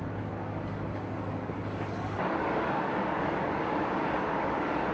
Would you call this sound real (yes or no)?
no